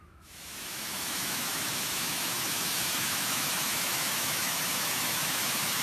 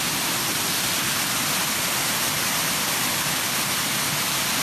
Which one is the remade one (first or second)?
first